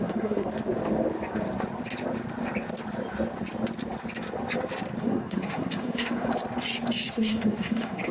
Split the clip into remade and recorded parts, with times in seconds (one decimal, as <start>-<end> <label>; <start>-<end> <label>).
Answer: 0.0-0.5 remade; 0.5-5.0 recorded; 5.0-6.3 remade; 6.3-7.1 recorded; 7.1-8.1 remade